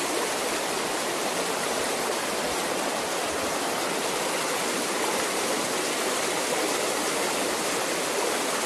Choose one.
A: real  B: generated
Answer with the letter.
A